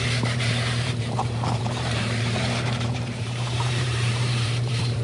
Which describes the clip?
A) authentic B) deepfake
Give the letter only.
B